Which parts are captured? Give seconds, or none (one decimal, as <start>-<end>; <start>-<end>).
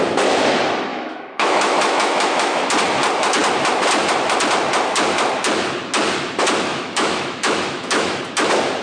0.0-0.9; 2.6-6.7; 8.2-8.8